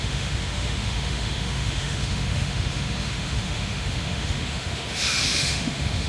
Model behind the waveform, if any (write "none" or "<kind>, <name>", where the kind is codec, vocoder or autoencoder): autoencoder, DAC-VAE